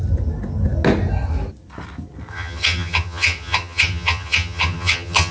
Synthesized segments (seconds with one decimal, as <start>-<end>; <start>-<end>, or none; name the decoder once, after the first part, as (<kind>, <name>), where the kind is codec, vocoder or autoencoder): 2.3-5.3 (vocoder, HiFi-GAN)